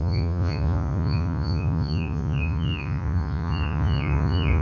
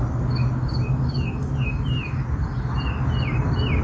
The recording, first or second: second